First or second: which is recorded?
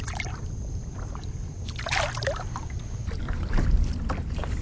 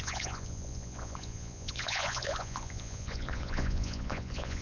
first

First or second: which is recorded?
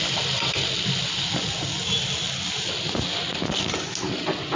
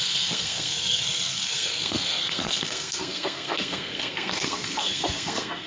first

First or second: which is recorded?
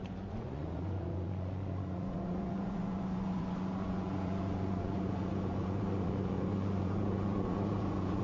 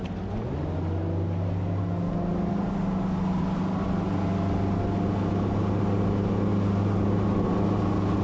second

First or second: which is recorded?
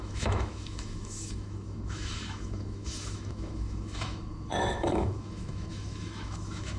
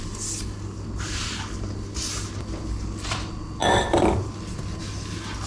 second